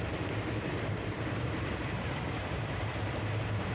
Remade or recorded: remade